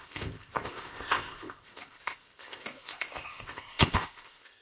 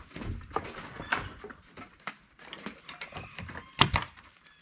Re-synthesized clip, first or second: first